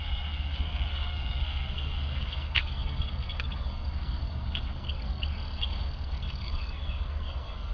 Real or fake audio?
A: fake